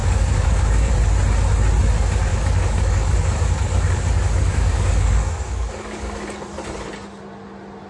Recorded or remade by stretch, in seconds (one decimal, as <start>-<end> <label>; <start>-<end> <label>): 0.0-0.9 remade; 0.9-2.3 recorded; 2.3-6.5 remade; 6.5-7.9 recorded